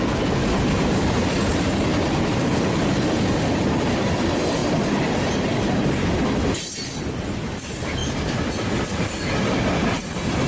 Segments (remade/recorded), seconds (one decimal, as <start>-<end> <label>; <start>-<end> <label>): 0.0-10.5 recorded